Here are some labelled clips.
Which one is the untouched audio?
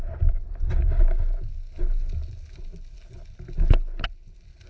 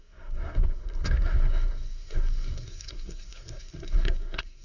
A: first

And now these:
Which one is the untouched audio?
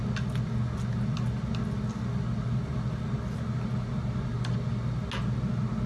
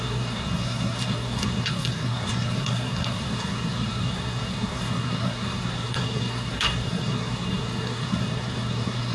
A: first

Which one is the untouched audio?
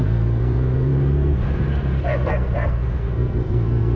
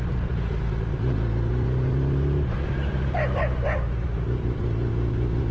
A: second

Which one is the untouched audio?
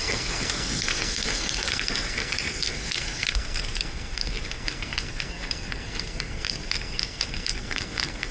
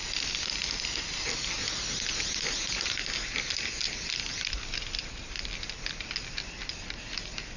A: second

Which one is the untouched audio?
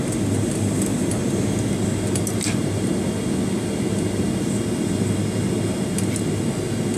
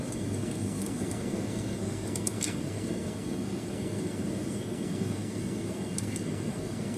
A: first